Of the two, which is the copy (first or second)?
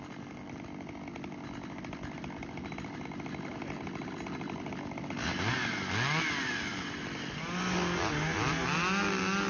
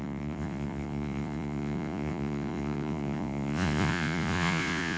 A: second